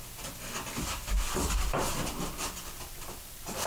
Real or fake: real